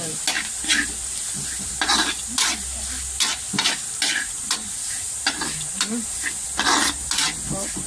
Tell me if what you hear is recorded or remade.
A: recorded